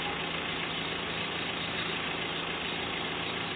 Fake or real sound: real